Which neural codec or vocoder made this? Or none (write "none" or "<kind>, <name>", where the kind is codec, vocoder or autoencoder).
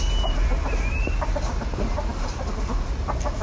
none